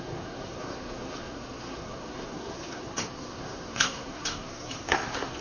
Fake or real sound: fake